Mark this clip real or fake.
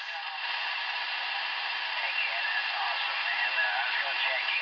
real